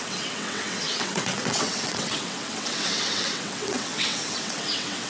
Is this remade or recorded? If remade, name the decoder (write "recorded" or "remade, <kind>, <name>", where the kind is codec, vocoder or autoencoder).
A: remade, vocoder, WaveNeXt